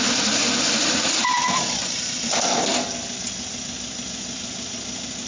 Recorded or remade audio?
recorded